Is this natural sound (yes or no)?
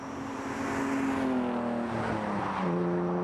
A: yes